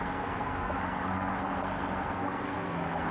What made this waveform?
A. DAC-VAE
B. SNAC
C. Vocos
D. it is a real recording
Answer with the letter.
B